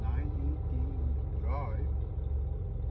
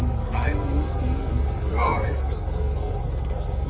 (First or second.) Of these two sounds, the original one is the first